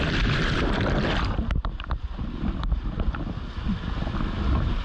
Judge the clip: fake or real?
real